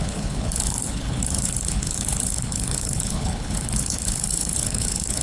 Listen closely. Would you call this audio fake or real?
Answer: fake